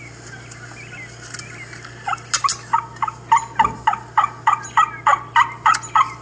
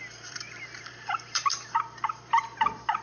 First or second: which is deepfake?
second